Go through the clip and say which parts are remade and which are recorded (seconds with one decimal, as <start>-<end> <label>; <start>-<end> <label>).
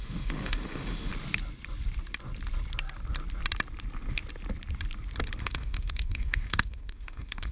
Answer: 0.0-1.1 remade; 1.1-5.4 recorded; 5.4-7.5 remade